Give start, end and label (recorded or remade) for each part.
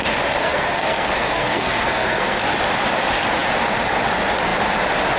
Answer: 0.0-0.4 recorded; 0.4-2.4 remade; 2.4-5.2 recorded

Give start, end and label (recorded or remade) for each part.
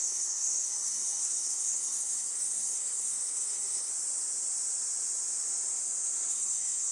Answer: 0.0-3.9 remade; 3.9-6.3 recorded; 6.3-6.9 remade